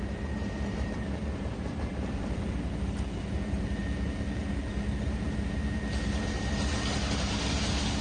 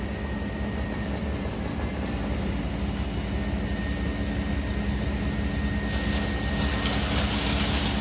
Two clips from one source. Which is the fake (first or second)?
first